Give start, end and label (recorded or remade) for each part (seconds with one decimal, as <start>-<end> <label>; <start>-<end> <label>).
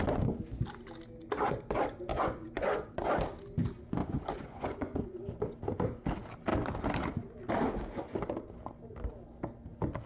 0.0-2.1 recorded; 2.1-3.1 remade; 3.1-4.0 recorded; 4.0-5.2 remade; 5.2-10.1 recorded